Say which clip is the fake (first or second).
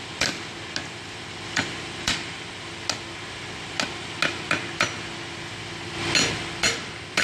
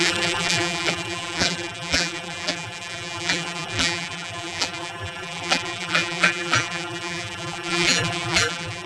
second